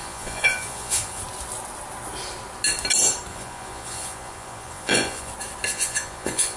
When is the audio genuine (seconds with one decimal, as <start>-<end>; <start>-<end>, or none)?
1.2-3.3; 5.3-5.7